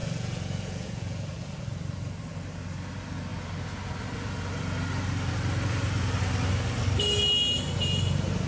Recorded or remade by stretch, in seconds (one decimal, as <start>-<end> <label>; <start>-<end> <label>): 0.0-1.6 remade; 1.6-8.5 recorded